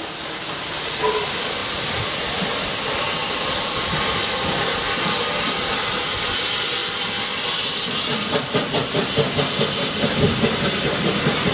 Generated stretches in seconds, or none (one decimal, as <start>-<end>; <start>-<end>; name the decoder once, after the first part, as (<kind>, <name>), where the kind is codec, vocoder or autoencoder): 3.2-4.2 (vocoder, BigVGAN v2)